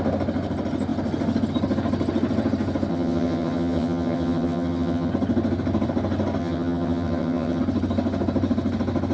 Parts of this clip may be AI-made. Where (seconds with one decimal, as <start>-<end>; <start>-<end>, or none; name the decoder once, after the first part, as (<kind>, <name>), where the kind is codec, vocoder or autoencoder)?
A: 2.9-5.1 (vocoder, HiFi-GAN); 6.4-7.6